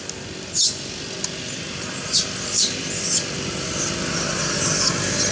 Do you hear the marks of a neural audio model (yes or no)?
no